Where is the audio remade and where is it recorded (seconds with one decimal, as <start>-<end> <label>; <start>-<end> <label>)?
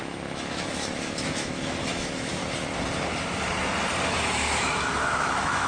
0.0-2.4 remade; 2.4-4.1 recorded; 4.1-5.7 remade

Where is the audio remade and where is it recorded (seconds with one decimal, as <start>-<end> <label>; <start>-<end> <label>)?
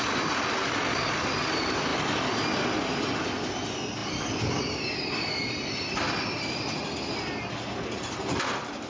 0.0-8.9 recorded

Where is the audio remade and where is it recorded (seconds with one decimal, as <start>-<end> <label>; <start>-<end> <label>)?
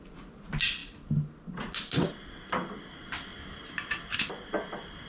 0.0-5.1 recorded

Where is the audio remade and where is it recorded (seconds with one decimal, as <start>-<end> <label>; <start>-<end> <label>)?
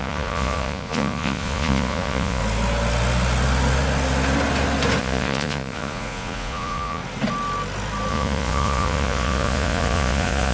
0.0-2.4 remade; 2.4-5.0 recorded; 5.0-7.0 remade; 7.0-8.1 recorded; 8.1-10.5 remade